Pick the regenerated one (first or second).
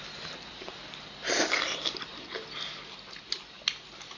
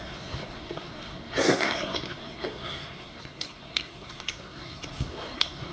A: second